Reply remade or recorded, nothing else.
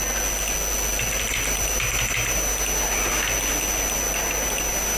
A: recorded